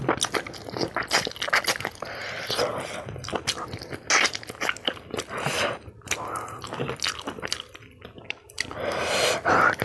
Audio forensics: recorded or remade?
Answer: recorded